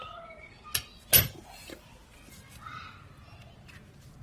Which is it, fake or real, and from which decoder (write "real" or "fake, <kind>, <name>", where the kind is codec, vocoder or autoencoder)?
real